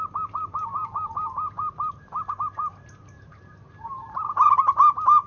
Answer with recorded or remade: remade